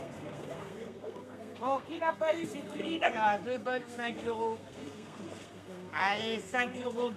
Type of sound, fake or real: fake